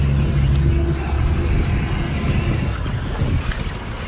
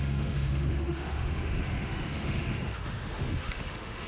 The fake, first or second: second